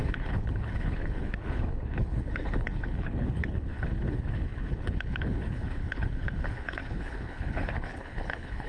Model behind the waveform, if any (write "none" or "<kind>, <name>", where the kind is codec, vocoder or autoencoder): codec, HILCodec